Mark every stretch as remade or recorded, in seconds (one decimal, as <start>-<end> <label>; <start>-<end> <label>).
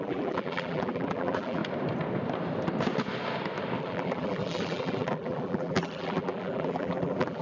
0.0-1.6 remade; 1.6-3.8 recorded; 3.8-7.4 remade